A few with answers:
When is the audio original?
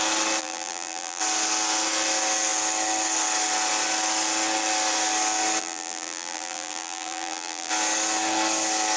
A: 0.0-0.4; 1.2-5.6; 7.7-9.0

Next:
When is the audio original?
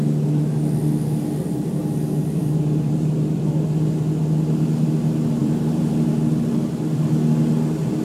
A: 0.0-2.2; 3.5-5.4; 6.3-8.0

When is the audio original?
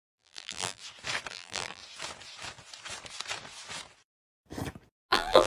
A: 0.8-1.3; 1.8-5.1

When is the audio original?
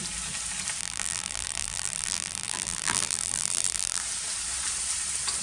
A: 0.0-0.8; 4.0-5.4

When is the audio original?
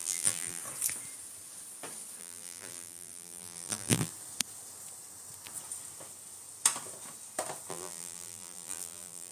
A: 0.6-2.2; 4.1-7.7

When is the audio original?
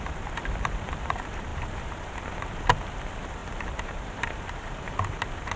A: none